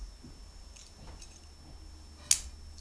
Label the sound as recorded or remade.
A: recorded